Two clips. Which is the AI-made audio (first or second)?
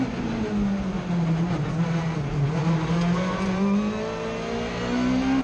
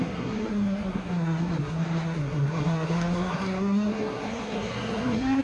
second